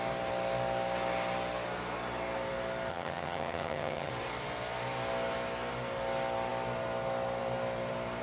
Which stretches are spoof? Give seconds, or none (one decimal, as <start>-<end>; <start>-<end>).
2.9-4.1